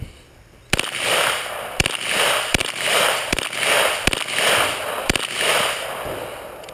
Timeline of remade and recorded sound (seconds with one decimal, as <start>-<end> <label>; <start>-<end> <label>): 0.0-2.6 recorded; 2.6-3.4 remade; 3.4-6.7 recorded